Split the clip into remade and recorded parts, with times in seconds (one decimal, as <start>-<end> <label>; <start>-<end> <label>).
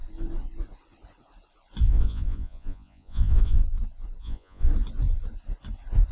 0.0-1.8 recorded; 1.8-3.6 remade; 3.6-4.2 recorded; 4.2-4.7 remade; 4.7-6.1 recorded